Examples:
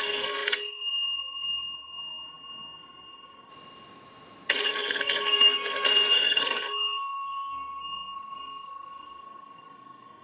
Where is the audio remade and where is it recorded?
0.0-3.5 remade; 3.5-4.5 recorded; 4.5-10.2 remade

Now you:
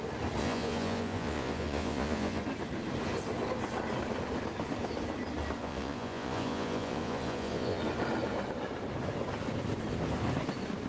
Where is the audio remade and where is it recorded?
0.0-0.4 recorded; 0.4-2.4 remade; 2.4-5.6 recorded; 5.6-7.8 remade; 7.8-10.9 recorded

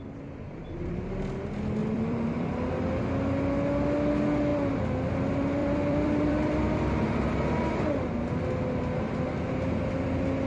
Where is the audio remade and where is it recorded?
0.0-1.8 recorded; 1.8-2.7 remade; 2.7-4.5 recorded; 4.5-5.1 remade; 5.1-5.6 recorded; 5.6-7.9 remade; 7.9-10.5 recorded

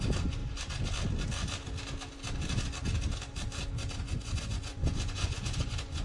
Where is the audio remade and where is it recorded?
0.0-0.4 remade; 0.4-4.0 recorded; 4.0-6.0 remade